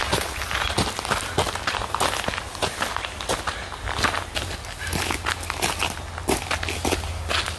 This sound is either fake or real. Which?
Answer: real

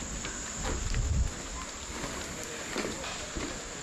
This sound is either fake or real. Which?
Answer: real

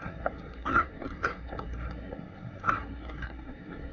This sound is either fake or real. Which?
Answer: fake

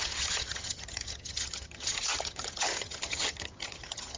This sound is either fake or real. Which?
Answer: fake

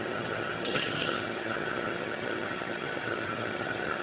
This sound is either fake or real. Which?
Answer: fake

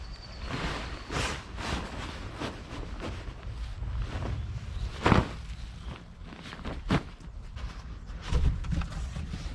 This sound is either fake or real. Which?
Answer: real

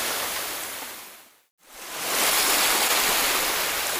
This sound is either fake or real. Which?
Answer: real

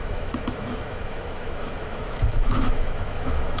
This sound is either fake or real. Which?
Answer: fake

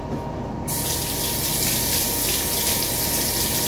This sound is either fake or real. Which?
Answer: real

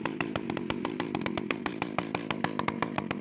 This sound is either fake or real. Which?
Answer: fake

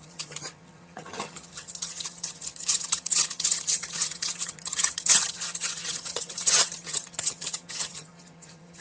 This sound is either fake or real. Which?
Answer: fake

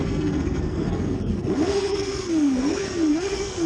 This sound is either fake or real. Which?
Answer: fake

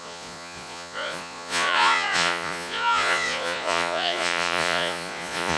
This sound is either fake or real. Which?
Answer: fake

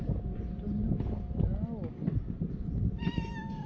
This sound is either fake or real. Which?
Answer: real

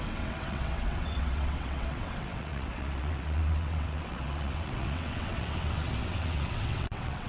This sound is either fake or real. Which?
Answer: fake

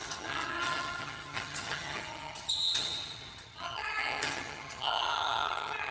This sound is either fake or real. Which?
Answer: fake